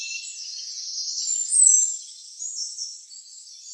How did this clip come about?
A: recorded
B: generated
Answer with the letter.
A